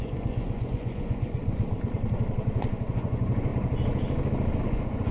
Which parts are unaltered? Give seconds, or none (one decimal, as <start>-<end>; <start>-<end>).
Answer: 1.4-2.9; 3.5-4.6